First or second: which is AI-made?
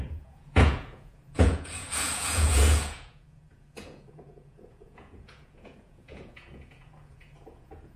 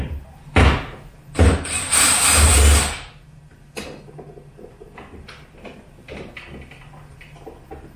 first